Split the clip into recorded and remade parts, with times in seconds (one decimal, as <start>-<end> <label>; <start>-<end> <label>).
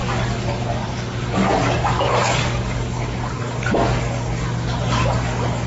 0.0-5.7 remade